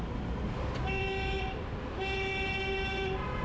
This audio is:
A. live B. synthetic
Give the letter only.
A